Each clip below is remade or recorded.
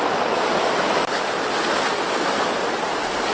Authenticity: recorded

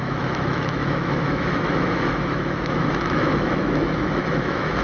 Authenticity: remade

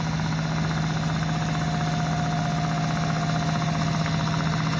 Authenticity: recorded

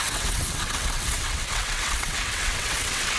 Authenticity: remade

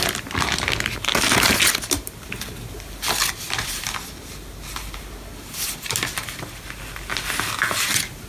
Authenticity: recorded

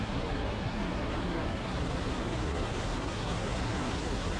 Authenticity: remade